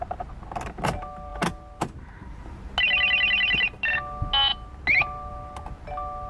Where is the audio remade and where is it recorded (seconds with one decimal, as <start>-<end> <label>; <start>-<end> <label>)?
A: 0.0-6.3 recorded